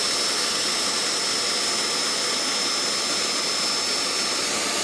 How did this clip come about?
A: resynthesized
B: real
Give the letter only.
B